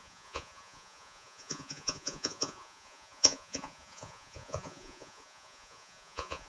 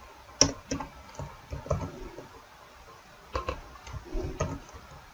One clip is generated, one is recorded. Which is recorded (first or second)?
second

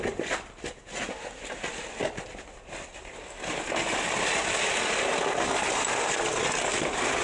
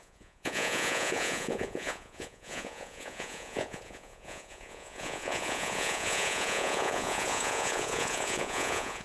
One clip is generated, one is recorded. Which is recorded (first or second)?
first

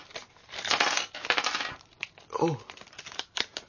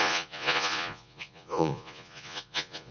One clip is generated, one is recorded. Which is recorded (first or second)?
first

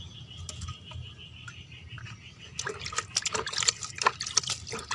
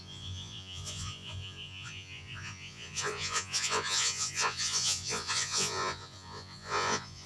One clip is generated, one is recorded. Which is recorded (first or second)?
first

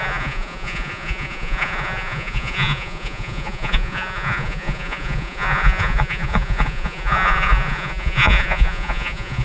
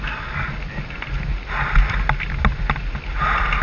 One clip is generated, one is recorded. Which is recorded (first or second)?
second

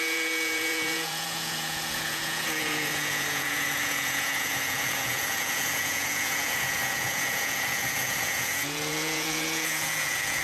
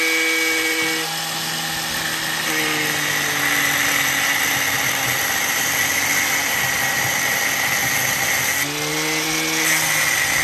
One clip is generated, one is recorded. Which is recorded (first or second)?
second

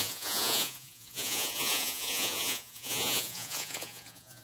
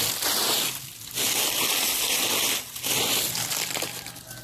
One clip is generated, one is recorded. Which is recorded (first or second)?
second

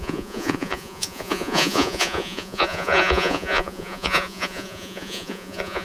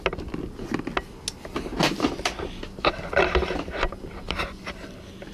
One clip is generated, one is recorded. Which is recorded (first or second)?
second